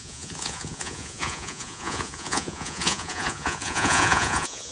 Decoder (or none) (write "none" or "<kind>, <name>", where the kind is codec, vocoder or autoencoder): vocoder, Vocos